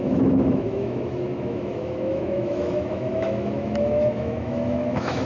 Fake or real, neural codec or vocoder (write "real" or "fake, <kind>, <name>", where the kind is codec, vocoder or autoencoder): fake, autoencoder, DAC-VAE